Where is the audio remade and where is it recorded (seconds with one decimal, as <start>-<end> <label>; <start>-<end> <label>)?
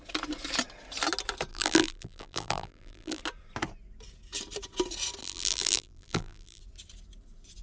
0.0-1.5 recorded; 1.5-3.2 remade; 3.2-5.2 recorded; 5.2-6.6 remade; 6.6-7.6 recorded